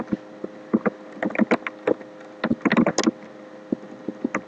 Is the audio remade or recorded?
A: recorded